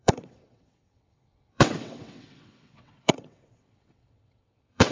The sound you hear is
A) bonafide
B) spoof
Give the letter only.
B